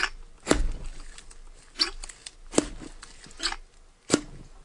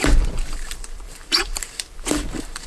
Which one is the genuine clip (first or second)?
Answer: first